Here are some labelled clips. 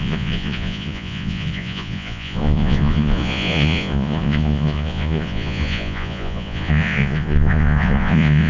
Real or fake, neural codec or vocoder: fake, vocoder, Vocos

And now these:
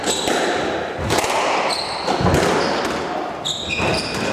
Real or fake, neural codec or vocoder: real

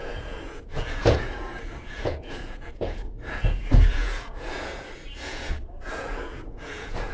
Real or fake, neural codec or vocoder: fake, vocoder, Vocos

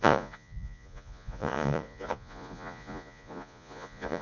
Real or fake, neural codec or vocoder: fake, vocoder, Vocos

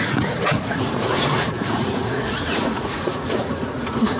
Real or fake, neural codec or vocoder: fake, vocoder, Vocos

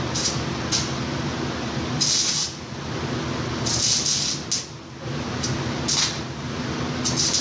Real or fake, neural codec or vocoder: real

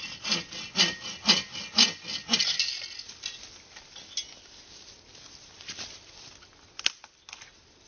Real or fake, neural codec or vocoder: real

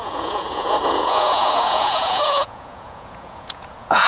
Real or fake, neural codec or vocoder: fake, vocoder, Vocos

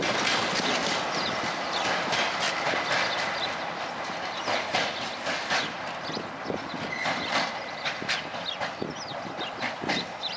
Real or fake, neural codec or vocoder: real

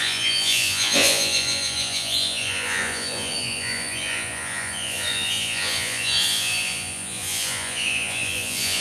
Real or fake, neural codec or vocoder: fake, vocoder, Vocos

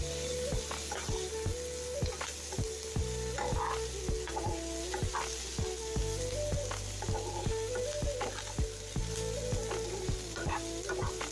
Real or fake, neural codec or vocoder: real